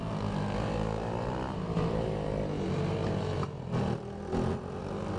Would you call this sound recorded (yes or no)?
yes